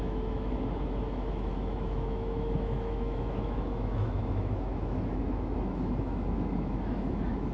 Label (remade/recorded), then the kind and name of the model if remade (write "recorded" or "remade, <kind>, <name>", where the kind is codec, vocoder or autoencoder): remade, autoencoder, DAC-VAE